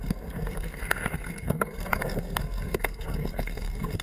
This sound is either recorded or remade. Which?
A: remade